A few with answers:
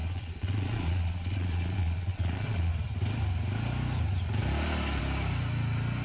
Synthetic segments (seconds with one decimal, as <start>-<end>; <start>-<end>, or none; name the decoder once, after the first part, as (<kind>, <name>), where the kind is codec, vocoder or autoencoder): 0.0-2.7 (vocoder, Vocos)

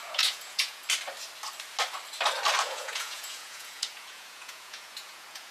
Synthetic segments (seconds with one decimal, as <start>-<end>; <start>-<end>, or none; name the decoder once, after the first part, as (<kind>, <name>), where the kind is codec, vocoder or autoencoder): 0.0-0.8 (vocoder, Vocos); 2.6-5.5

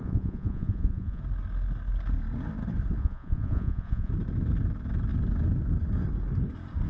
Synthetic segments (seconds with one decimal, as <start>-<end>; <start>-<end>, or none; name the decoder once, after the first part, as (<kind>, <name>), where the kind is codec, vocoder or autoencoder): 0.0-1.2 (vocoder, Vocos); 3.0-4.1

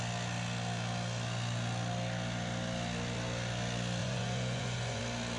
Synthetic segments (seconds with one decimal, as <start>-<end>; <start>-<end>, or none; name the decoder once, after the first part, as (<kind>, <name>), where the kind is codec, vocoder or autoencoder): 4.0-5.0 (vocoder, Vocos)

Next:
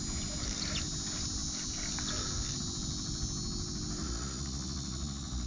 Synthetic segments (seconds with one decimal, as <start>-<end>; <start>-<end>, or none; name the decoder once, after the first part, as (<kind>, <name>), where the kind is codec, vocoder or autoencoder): 4.0-5.5 (vocoder, Vocos)

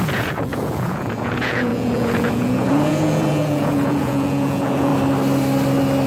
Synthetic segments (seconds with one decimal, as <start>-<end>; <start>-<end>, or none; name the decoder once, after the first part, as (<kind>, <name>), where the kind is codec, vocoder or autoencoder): 0.0-4.9 (vocoder, Vocos)